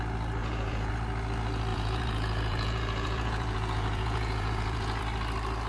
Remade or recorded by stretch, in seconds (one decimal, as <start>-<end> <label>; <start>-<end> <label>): 0.0-0.4 recorded; 0.4-0.9 remade; 0.9-1.7 recorded; 1.7-5.0 remade; 5.0-5.7 recorded